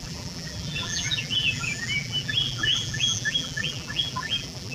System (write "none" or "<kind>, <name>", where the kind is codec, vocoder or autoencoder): vocoder, BigVGAN v2